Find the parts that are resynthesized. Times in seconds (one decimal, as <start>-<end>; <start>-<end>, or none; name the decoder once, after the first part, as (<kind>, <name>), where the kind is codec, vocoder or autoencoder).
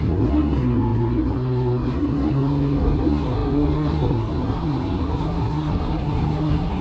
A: 0.0-6.8 (codec, SNAC)